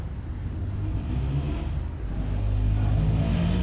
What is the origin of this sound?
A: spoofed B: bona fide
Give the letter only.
B